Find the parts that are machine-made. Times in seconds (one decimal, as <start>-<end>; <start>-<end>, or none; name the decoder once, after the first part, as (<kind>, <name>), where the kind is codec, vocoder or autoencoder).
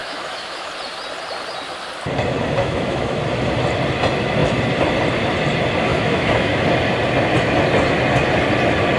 0.0-0.7 (autoencoder, DAC-VAE); 2.6-3.2; 5.9-6.6